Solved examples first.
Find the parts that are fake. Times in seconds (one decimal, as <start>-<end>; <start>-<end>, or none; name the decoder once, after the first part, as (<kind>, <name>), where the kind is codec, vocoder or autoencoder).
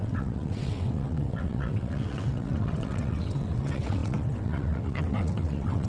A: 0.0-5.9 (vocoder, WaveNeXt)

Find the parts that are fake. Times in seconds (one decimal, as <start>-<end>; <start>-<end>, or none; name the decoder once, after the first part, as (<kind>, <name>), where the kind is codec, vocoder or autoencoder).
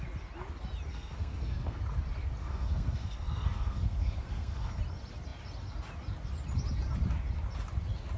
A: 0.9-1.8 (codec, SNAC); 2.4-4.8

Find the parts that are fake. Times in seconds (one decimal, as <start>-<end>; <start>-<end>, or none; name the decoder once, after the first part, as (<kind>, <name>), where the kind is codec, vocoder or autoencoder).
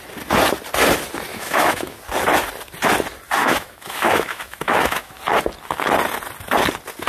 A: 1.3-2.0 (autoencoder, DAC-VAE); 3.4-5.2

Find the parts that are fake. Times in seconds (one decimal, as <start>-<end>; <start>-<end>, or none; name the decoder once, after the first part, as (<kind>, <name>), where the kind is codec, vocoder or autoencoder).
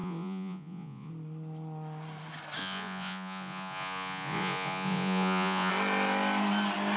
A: 0.0-1.1 (vocoder, Vocos); 2.6-5.7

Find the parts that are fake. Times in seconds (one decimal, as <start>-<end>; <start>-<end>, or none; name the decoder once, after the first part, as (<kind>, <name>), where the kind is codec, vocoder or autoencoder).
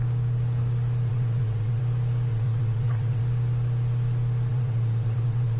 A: 1.1-1.8 (vocoder, WaveNeXt); 2.3-3.2; 4.5-5.6